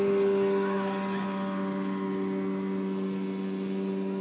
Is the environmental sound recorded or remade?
recorded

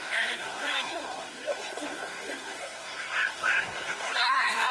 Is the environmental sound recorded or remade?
remade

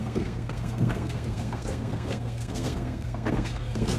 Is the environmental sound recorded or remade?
remade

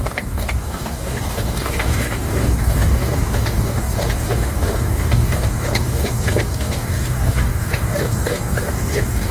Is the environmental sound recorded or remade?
remade